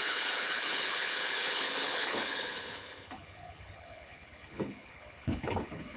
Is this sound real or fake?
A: fake